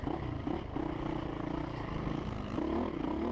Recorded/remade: recorded